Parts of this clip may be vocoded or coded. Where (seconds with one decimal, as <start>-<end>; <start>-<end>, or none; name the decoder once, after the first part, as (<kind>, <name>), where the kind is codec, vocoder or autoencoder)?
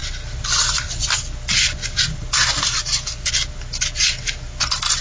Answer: none